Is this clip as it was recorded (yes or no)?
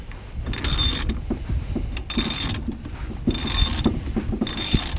yes